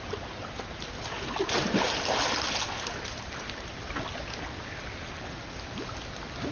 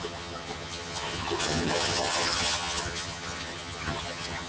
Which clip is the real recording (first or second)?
first